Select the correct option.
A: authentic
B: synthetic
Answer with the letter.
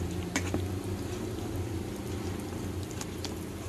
A